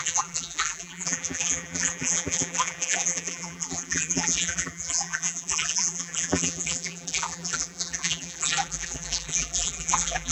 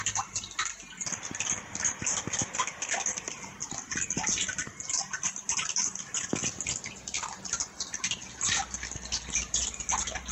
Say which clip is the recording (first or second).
second